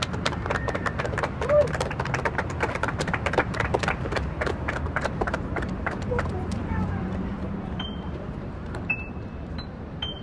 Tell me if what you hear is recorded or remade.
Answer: remade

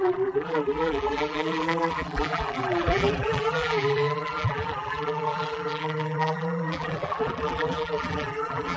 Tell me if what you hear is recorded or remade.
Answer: remade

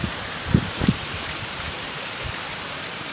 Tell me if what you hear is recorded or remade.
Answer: remade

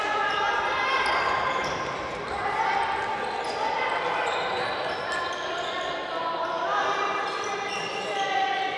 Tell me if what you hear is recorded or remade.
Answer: recorded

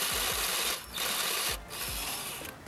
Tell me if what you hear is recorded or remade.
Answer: recorded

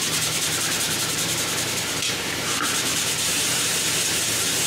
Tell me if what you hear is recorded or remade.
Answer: remade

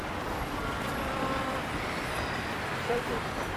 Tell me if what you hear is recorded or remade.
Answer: remade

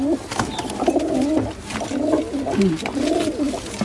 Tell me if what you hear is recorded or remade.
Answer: recorded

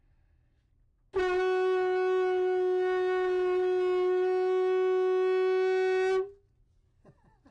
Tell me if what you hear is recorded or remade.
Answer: recorded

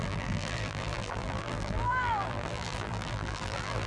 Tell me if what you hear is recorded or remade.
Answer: remade